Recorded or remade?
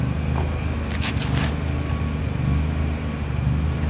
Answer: recorded